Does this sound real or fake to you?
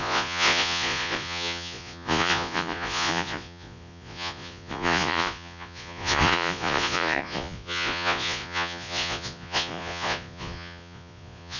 fake